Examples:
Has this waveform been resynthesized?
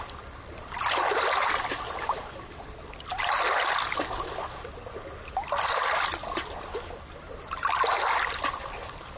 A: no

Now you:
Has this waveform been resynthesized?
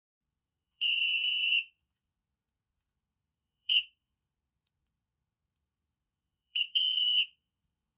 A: yes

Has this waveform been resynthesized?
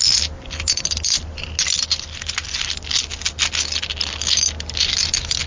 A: no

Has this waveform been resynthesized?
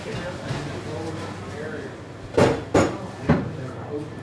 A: no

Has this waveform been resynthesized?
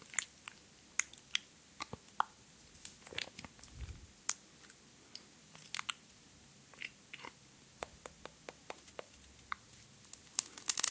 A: no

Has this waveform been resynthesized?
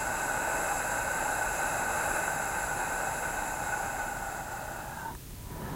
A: no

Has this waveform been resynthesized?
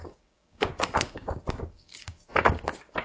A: yes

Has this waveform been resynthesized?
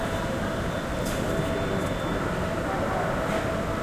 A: no